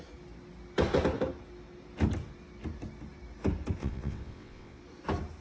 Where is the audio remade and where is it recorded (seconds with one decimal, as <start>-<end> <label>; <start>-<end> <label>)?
0.0-3.8 recorded; 3.8-4.8 remade; 4.8-5.4 recorded